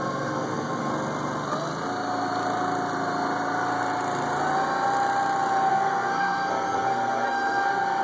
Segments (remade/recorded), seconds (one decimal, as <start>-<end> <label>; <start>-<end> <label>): 0.0-0.9 remade; 0.9-5.7 recorded; 5.7-8.0 remade